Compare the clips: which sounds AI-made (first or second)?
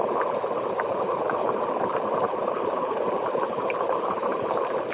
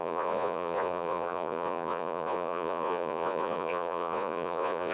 second